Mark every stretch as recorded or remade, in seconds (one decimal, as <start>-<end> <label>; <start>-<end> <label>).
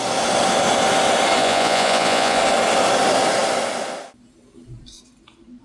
0.0-1.4 recorded; 1.4-2.4 remade; 2.4-5.6 recorded